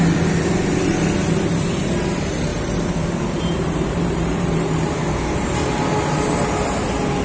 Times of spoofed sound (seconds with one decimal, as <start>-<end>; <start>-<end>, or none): 2.5-4.9